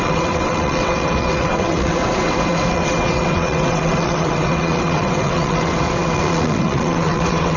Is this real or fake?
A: fake